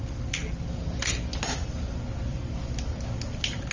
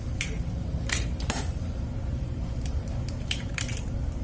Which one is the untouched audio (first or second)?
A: first